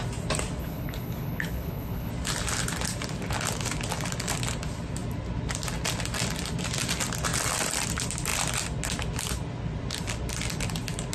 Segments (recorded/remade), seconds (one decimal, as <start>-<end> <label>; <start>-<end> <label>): 0.0-0.6 recorded; 0.6-2.1 remade; 2.1-11.1 recorded